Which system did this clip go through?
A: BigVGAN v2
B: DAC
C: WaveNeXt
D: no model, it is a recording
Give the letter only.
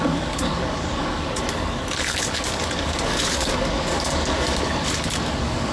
B